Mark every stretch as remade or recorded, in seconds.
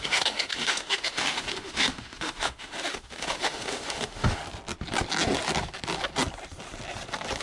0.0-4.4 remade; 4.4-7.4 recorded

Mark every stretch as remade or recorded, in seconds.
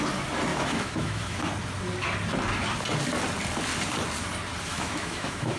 0.0-0.5 recorded; 0.5-1.4 remade; 1.4-4.7 recorded; 4.7-5.6 remade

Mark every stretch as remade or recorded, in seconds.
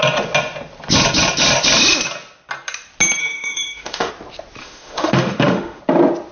0.0-3.2 recorded; 3.2-4.1 remade; 4.1-4.6 recorded; 4.6-5.8 remade; 5.8-6.3 recorded